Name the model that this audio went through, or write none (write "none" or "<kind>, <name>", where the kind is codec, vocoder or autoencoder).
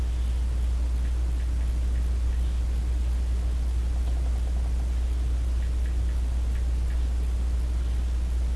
none